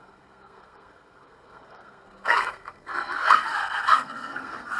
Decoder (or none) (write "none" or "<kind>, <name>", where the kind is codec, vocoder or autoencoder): codec, SNAC